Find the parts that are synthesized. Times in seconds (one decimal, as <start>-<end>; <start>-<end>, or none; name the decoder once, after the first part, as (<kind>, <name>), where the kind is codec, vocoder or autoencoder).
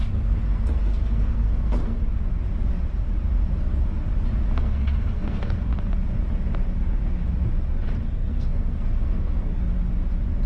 0.0-2.0 (codec, SNAC); 4.6-5.7; 8.1-9.5